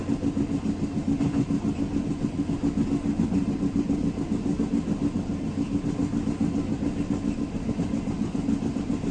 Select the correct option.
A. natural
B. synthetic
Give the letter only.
A